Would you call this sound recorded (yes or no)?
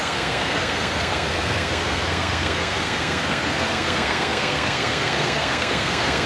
no